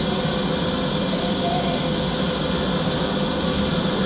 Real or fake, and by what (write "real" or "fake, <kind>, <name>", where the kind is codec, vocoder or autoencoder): real